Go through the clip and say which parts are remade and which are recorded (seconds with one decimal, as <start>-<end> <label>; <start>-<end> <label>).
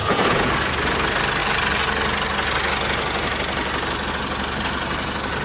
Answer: 0.0-0.5 remade; 0.5-5.4 recorded